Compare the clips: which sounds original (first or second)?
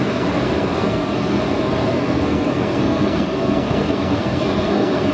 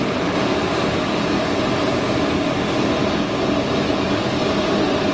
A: second